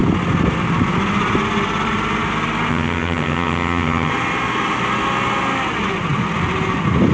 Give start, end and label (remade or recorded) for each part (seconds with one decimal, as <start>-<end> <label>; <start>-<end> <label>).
0.0-2.7 recorded; 2.7-4.1 remade; 4.1-7.1 recorded